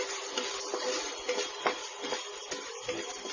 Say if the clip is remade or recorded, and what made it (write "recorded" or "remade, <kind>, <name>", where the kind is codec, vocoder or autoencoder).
recorded